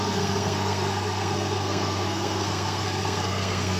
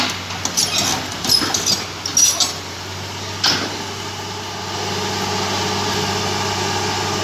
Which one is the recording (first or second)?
second